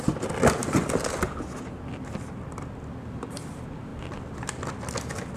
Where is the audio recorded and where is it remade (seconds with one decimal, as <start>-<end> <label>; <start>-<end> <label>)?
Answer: 0.0-5.4 recorded